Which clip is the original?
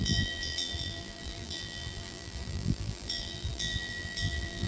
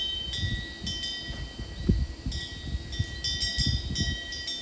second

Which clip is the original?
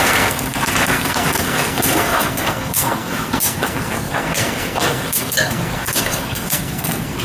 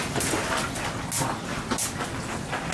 second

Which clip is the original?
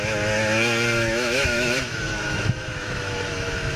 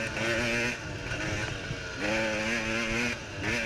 second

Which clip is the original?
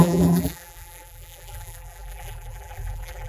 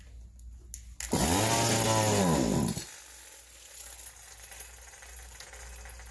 second